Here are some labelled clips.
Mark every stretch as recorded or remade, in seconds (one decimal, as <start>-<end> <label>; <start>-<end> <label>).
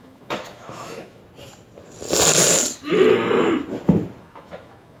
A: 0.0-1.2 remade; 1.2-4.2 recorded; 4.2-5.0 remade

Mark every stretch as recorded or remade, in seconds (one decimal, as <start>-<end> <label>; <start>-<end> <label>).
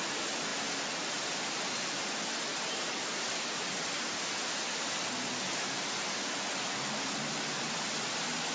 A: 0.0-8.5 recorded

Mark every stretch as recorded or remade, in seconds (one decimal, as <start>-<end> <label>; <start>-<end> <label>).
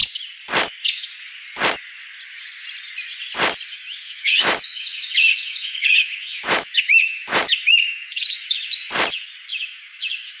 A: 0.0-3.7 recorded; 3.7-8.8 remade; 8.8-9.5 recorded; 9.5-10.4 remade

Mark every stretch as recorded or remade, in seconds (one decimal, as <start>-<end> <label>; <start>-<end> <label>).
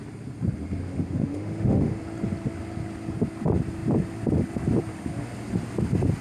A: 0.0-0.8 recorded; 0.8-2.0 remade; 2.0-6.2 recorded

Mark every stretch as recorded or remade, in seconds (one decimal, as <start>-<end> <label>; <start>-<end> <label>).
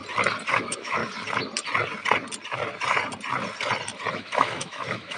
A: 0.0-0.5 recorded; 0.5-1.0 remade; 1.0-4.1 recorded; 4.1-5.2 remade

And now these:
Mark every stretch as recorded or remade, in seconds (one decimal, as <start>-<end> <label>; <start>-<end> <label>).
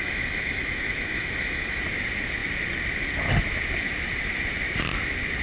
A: 0.0-1.8 remade; 1.8-5.4 recorded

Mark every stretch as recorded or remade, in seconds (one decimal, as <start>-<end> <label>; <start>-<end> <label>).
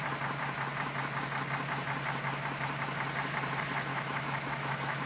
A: 0.0-3.9 recorded; 3.9-5.1 remade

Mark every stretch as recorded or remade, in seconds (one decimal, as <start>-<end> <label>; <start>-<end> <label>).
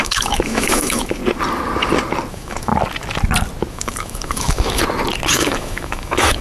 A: 0.0-1.2 remade; 1.2-2.3 recorded; 2.3-2.7 remade; 2.7-3.7 recorded; 3.7-4.8 remade; 4.8-5.3 recorded; 5.3-6.4 remade